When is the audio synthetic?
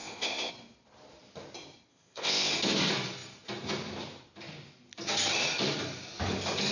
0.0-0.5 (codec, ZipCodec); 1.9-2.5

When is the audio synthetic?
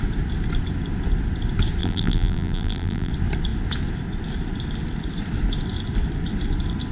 1.8-3.1 (vocoder, BigVGAN v2)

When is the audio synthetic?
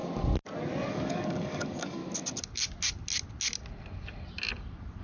0.9-2.0 (codec, DAC)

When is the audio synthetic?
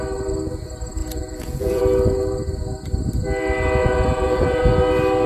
1.0-1.8 (vocoder, Vocos); 3.8-4.6